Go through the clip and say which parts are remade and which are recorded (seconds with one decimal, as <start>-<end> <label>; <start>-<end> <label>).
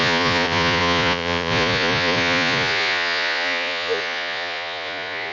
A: 0.0-5.3 remade